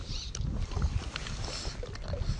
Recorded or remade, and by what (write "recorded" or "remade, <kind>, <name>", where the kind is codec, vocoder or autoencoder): recorded